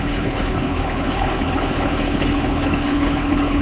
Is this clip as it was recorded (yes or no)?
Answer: no